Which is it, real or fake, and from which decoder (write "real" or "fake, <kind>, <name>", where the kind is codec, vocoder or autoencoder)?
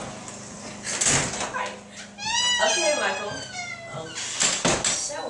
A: real